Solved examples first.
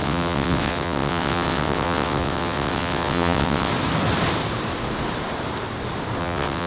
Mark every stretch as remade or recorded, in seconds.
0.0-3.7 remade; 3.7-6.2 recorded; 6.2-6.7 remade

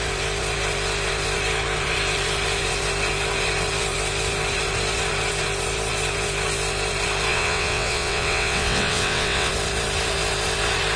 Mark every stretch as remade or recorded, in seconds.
0.0-7.3 recorded; 7.3-9.5 remade; 9.5-11.0 recorded

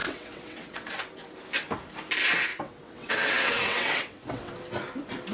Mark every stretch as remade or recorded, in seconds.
0.0-0.9 remade; 0.9-2.5 recorded; 2.5-4.5 remade; 4.5-5.3 recorded

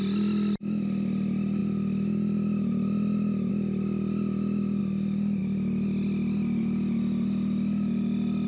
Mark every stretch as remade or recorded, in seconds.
0.0-8.5 recorded

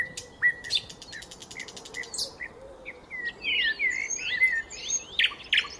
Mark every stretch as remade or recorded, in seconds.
0.0-5.8 recorded

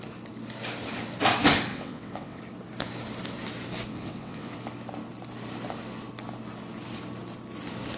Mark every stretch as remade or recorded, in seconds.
0.0-1.7 recorded; 1.7-2.4 remade; 2.4-3.9 recorded; 3.9-4.6 remade; 4.6-8.0 recorded